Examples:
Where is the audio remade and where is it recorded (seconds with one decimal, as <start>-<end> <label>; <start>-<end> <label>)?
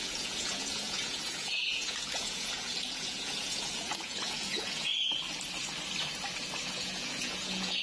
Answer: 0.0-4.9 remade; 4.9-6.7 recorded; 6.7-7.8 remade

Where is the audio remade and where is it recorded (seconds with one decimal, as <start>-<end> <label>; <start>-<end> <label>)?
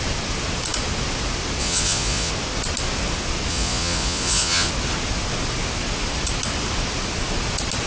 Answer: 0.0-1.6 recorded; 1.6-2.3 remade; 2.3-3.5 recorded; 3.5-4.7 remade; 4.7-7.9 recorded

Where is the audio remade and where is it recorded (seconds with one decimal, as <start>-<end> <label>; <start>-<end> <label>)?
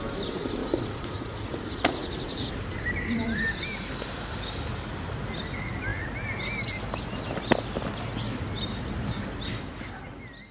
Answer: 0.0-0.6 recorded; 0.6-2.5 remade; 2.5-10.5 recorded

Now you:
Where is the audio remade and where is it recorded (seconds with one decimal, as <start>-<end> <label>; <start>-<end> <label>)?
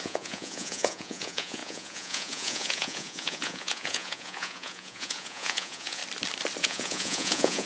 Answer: 0.0-6.0 remade; 6.0-6.6 recorded; 6.6-7.7 remade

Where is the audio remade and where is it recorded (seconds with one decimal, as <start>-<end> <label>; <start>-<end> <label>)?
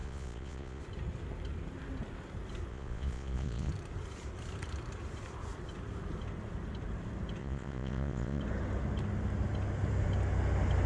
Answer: 0.0-0.8 remade; 0.8-2.7 recorded; 2.7-3.7 remade; 3.7-7.4 recorded; 7.4-8.4 remade; 8.4-10.9 recorded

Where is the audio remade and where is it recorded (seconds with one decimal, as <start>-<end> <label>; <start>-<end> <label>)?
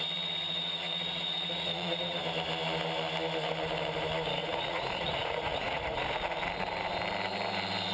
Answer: 0.0-0.5 recorded; 0.5-2.2 remade; 2.2-4.4 recorded; 4.4-6.0 remade; 6.0-7.9 recorded